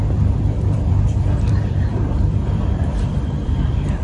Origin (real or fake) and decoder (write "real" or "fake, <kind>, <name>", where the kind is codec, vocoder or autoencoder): fake, vocoder, BigVGAN v2